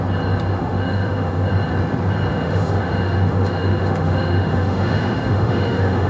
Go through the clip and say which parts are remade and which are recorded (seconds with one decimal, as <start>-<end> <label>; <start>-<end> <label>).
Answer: 0.0-0.5 recorded; 0.5-1.5 remade; 1.5-2.3 recorded; 2.3-6.1 remade